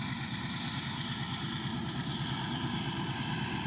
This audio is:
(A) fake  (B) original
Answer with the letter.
B